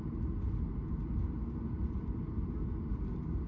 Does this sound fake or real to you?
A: real